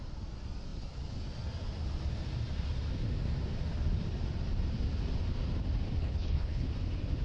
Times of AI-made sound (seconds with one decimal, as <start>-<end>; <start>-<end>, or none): 6.0-6.7